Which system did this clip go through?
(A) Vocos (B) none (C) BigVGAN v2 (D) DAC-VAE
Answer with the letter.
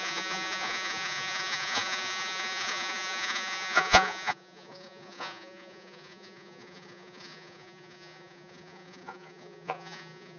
A